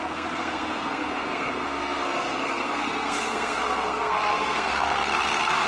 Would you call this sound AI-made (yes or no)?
yes